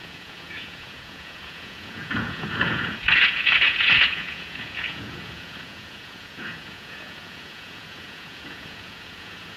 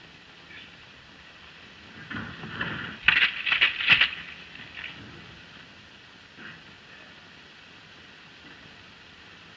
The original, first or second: second